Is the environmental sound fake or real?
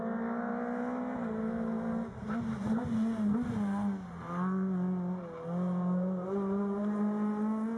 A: real